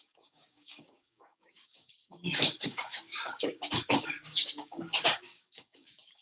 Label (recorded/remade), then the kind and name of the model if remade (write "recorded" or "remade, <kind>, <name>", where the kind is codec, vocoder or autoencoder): remade, codec, DAC